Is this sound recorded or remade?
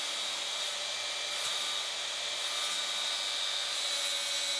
recorded